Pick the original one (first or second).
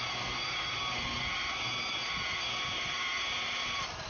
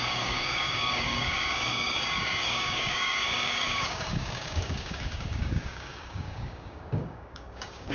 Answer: first